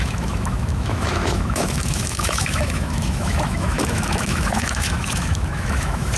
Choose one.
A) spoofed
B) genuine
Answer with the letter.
A